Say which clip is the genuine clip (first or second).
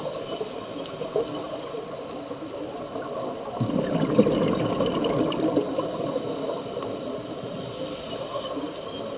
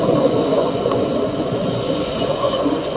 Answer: first